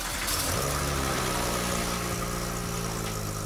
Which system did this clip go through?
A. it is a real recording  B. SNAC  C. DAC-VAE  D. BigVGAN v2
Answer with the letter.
A